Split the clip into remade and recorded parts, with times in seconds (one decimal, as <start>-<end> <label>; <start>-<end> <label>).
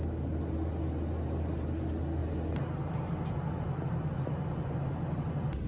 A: 0.0-5.7 recorded